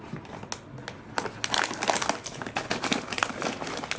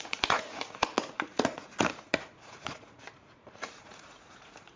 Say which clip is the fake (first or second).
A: second